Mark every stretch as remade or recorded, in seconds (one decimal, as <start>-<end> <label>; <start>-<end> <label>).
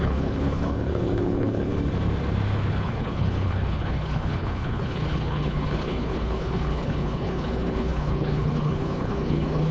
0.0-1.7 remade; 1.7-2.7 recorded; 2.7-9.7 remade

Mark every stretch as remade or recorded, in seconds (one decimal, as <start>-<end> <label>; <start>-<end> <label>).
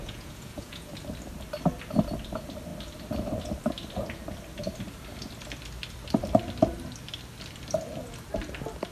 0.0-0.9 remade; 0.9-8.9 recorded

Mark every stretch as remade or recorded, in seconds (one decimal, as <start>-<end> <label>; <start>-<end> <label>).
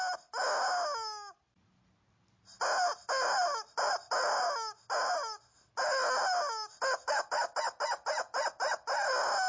0.0-9.5 recorded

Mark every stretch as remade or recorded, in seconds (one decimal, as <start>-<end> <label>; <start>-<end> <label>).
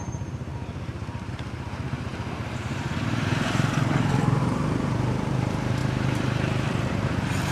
0.0-7.5 remade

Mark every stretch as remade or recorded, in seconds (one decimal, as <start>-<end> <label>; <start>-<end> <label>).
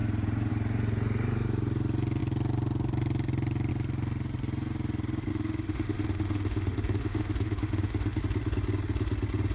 0.0-5.3 recorded; 5.3-8.2 remade; 8.2-9.5 recorded